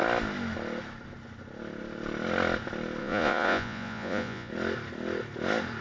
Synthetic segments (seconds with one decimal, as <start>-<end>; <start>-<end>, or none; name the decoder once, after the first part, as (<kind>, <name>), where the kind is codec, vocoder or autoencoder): 3.0-4.5 (vocoder, Vocos)